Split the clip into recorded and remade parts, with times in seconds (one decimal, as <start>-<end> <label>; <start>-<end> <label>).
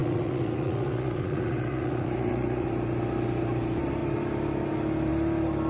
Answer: 0.0-2.7 remade; 2.7-5.7 recorded